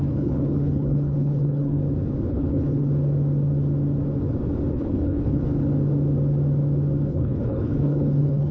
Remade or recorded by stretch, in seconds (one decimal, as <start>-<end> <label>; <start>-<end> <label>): 0.0-1.8 remade; 1.8-2.3 recorded; 2.3-2.9 remade; 2.9-4.7 recorded; 4.7-5.4 remade; 5.4-7.1 recorded; 7.1-8.5 remade